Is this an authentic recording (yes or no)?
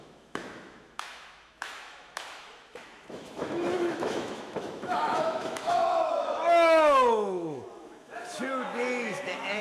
no